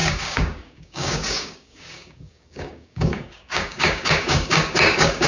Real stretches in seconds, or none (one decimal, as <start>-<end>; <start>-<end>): none

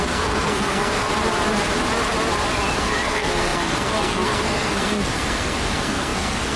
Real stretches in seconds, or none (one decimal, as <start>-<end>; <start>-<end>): 1.1-2.8

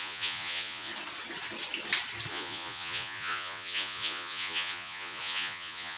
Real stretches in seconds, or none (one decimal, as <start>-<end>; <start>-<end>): 0.9-2.3

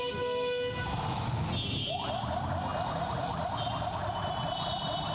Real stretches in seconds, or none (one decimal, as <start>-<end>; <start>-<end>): 0.0-5.1